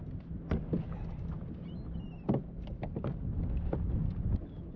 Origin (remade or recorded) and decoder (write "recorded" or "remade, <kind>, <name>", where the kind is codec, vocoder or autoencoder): recorded